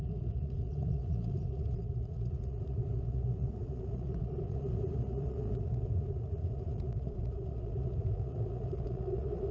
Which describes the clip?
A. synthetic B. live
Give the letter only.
A